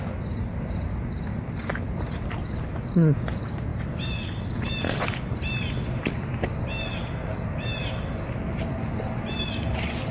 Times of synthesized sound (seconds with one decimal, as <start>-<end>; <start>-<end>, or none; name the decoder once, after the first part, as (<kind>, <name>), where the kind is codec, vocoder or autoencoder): none